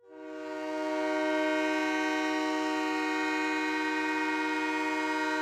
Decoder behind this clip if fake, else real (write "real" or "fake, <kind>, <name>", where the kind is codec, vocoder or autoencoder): real